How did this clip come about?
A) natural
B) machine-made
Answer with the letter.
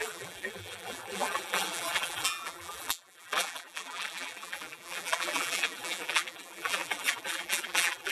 B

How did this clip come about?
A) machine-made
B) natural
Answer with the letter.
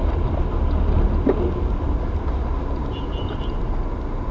B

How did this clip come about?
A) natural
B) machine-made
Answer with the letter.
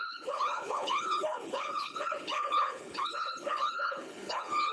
B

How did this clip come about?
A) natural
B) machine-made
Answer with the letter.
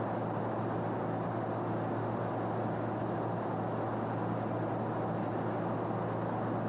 A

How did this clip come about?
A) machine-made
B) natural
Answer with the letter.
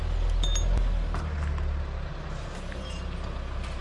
B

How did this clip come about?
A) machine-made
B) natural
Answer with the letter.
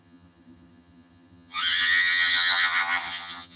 A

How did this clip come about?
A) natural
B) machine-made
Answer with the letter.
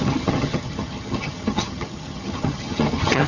B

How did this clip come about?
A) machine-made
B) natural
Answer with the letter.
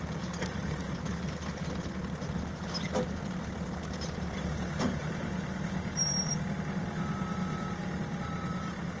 A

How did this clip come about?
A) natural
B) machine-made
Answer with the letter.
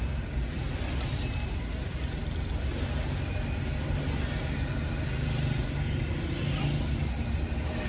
A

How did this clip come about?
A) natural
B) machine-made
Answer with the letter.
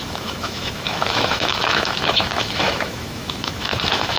B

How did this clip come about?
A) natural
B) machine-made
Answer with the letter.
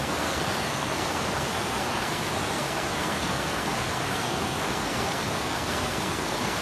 B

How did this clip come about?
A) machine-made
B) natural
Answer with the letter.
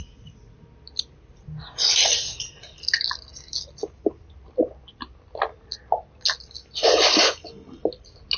B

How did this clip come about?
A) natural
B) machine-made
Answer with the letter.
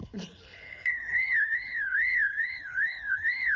B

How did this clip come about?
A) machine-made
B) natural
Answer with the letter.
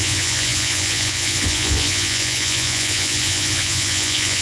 A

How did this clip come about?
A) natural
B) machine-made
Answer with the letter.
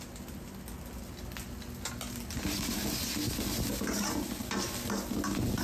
A